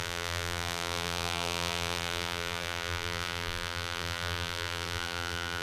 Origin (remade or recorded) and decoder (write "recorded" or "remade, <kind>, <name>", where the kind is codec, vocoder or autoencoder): remade, vocoder, BigVGAN v2